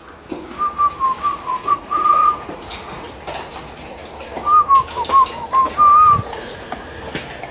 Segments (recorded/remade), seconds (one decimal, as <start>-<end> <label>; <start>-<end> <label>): 0.0-1.3 recorded; 1.3-3.1 remade; 3.1-6.3 recorded; 6.3-7.0 remade; 7.0-7.5 recorded